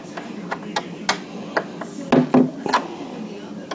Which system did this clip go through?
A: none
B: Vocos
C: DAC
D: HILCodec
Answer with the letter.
A